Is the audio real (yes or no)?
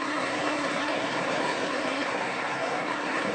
no